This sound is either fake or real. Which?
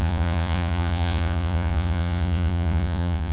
fake